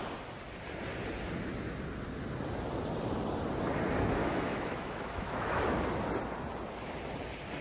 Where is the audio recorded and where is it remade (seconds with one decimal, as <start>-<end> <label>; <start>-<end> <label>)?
0.0-4.2 recorded; 4.2-5.8 remade; 5.8-7.6 recorded